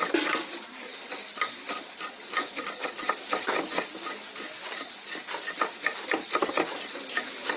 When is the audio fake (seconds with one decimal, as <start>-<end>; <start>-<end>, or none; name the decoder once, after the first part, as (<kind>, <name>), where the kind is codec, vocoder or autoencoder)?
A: none